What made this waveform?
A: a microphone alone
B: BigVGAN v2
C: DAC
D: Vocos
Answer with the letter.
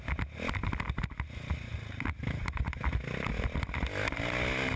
A